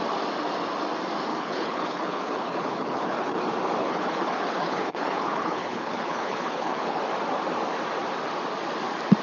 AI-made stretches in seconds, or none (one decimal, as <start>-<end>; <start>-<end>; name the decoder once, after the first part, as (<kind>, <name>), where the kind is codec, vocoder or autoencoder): 1.3-3.4 (codec, HILCodec); 3.8-7.0